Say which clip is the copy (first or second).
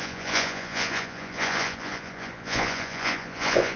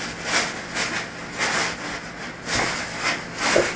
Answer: first